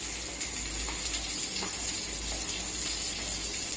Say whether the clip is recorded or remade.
recorded